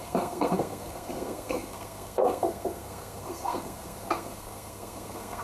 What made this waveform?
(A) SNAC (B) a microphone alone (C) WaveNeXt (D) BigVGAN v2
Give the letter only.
A